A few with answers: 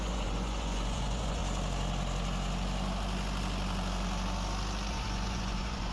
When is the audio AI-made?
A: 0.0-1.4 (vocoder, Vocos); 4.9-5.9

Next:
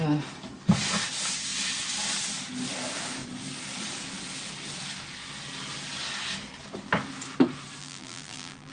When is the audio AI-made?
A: 7.8-8.7 (vocoder, BigVGAN v2)

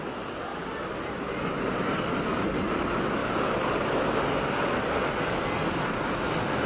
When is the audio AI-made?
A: none

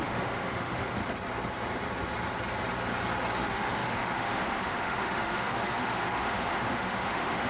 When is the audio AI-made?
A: 0.0-1.0 (autoencoder, DAC-VAE); 3.4-7.5

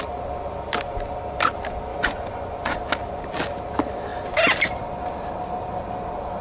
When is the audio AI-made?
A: 1.9-2.8 (vocoder, Vocos)

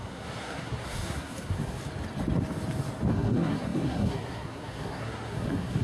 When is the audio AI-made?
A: 0.0-1.8 (codec, SNAC); 3.1-5.8